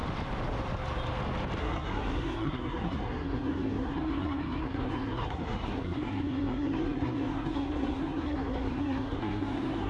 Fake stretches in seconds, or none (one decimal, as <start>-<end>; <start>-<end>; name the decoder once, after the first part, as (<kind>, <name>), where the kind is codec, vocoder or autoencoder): 1.6-9.9 (codec, SNAC)